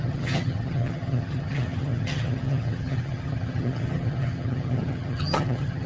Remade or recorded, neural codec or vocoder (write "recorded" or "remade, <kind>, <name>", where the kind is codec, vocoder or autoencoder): remade, vocoder, HiFi-GAN